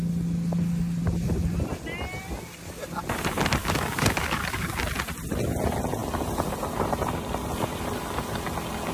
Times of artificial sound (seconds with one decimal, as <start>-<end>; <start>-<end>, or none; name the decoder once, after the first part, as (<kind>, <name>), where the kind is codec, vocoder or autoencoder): 3.6-4.8 (codec, DAC)